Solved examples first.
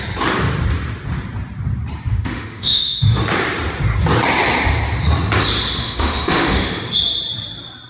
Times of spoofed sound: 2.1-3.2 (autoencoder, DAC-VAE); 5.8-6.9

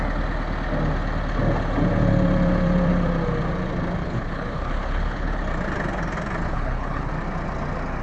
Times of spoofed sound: 4.0-5.4 (codec, HILCodec); 6.5-7.1

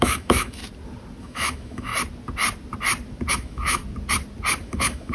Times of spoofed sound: 0.0-0.6 (autoencoder, DAC-VAE); 1.2-1.9; 3.3-3.8; 4.6-5.1

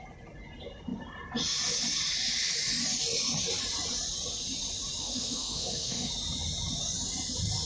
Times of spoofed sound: 5.0-6.1 (autoencoder, DAC-VAE)

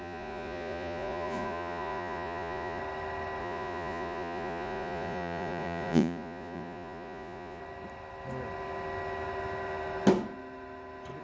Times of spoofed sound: 0.0-2.8 (vocoder, Vocos); 3.4-7.6